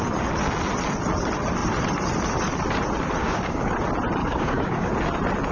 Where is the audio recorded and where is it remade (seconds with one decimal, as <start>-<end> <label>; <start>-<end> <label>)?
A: 0.0-3.2 recorded; 3.2-3.7 remade; 3.7-4.2 recorded; 4.2-4.9 remade; 4.9-5.5 recorded